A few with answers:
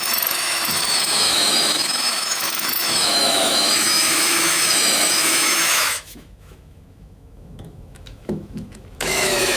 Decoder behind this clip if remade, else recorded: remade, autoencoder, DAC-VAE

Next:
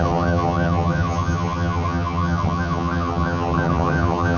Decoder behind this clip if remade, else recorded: remade, vocoder, HiFi-GAN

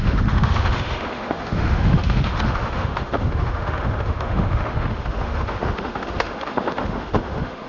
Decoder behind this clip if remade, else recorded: remade, autoencoder, DAC-VAE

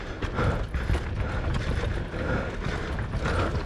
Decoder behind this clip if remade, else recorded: recorded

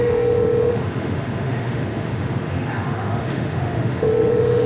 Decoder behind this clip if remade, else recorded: remade, autoencoder, DAC-VAE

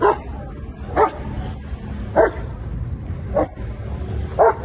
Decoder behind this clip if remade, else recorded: recorded